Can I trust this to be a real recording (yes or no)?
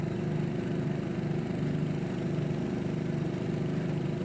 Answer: no